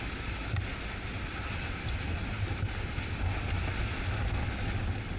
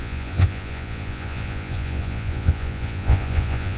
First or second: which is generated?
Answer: second